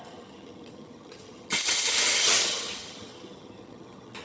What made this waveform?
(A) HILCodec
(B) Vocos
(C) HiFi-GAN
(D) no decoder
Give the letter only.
C